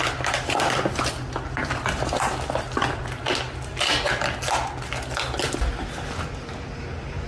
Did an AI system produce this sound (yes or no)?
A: no